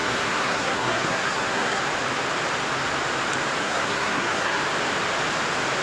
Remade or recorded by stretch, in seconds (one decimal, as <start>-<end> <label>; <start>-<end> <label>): 0.0-1.8 remade; 1.8-3.6 recorded; 3.6-4.6 remade; 4.6-5.8 recorded

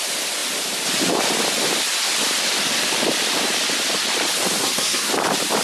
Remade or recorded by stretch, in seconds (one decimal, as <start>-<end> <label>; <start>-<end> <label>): 0.0-4.6 recorded; 4.6-5.1 remade; 5.1-5.6 recorded

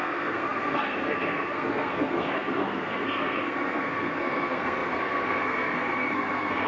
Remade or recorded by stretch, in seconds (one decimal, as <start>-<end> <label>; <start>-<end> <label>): 0.0-6.7 remade

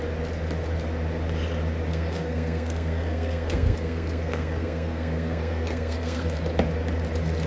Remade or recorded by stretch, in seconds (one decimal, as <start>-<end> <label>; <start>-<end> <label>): 0.0-1.9 recorded; 1.9-6.4 remade; 6.4-7.5 recorded